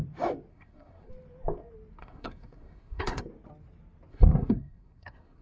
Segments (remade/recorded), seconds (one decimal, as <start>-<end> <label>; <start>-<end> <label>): 0.0-0.5 recorded; 0.5-1.1 remade; 1.1-2.0 recorded; 2.0-3.2 remade; 3.2-4.1 recorded; 4.1-5.4 remade